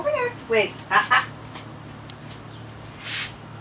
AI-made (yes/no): no